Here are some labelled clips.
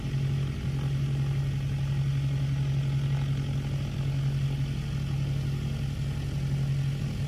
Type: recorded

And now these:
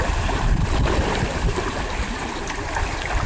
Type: remade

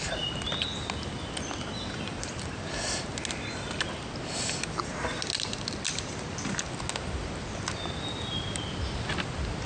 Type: recorded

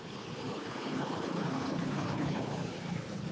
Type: remade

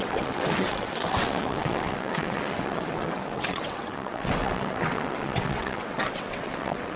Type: remade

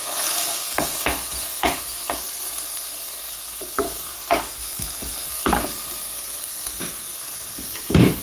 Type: remade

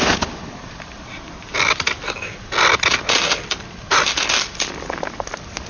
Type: recorded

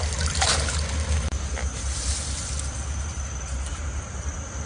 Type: recorded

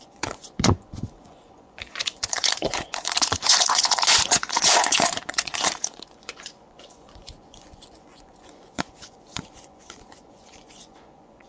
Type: remade